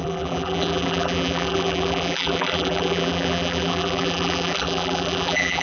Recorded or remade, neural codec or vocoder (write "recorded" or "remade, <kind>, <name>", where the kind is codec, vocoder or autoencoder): remade, vocoder, BigVGAN v2